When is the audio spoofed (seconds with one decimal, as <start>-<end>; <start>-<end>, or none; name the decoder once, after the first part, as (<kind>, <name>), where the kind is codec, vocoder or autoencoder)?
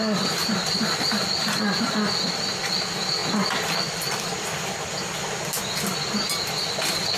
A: none